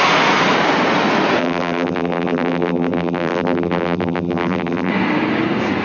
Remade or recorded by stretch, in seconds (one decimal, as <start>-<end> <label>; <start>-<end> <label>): 0.0-1.4 recorded; 1.4-4.9 remade; 4.9-5.8 recorded